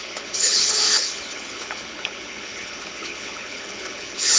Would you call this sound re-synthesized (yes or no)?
yes